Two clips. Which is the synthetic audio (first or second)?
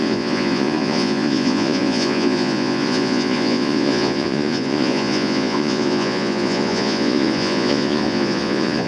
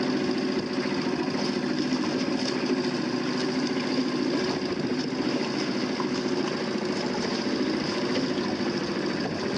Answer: first